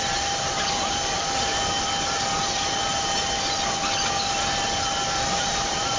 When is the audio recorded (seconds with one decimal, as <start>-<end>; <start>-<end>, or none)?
1.5-5.1